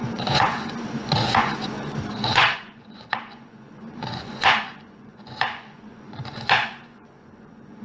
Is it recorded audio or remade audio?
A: remade